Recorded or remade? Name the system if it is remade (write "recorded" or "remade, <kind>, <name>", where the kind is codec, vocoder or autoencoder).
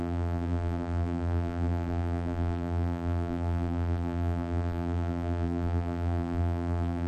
remade, vocoder, BigVGAN v2